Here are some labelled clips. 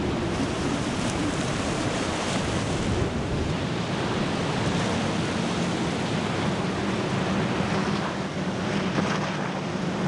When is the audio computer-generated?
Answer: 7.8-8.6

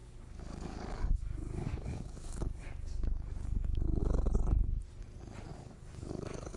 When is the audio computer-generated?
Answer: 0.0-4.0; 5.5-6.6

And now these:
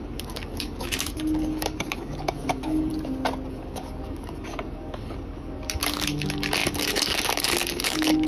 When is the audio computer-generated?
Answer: 0.0-2.9; 3.5-8.3

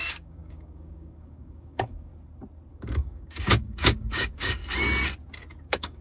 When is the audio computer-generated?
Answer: 0.0-2.1; 2.7-4.6; 5.6-6.0

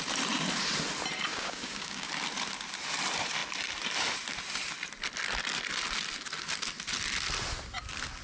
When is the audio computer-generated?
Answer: 1.3-2.1